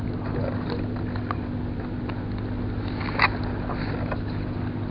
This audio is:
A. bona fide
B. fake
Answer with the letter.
A